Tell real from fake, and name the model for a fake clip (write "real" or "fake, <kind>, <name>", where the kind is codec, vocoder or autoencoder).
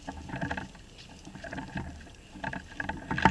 real